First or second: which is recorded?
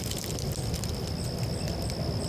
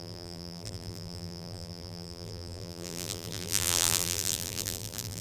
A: first